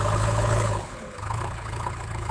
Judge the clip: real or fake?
fake